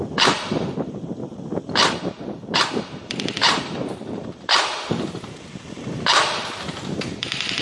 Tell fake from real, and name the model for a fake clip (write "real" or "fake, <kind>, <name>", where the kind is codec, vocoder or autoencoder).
fake, vocoder, BigVGAN v2